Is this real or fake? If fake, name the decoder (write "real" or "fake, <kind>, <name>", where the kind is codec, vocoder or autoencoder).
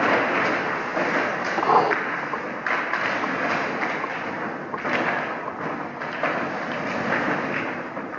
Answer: real